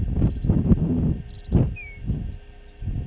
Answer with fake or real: real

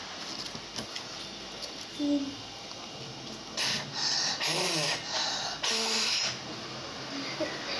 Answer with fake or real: real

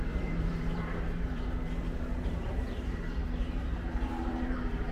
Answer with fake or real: fake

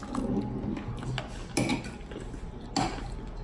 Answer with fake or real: real